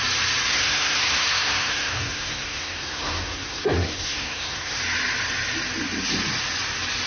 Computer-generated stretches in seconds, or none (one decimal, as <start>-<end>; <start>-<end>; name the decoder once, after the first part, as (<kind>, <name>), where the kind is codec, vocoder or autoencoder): 0.5-4.8 (codec, SNAC)